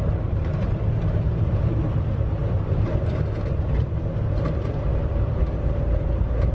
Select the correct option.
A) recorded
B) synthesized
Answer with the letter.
B